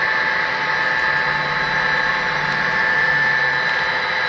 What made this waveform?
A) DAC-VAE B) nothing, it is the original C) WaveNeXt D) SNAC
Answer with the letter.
B